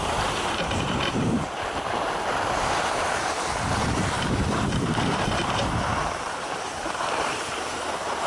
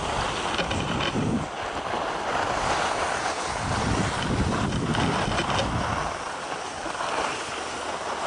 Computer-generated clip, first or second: first